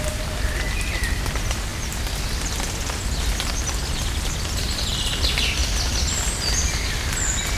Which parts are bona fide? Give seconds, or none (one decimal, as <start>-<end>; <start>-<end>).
0.0-7.6